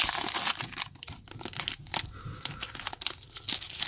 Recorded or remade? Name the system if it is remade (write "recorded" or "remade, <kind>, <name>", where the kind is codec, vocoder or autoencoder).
recorded